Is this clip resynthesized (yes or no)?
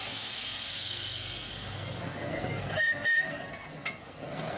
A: yes